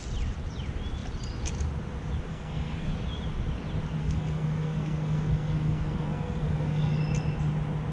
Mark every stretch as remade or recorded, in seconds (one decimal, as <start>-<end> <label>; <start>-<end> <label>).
0.0-2.3 recorded; 2.3-2.9 remade; 2.9-4.0 recorded; 4.0-7.0 remade; 7.0-7.9 recorded